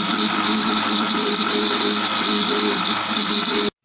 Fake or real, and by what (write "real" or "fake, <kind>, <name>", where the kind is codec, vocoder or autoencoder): real